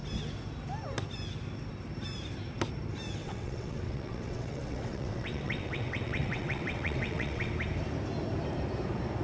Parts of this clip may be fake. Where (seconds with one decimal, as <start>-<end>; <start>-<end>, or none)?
3.2-7.5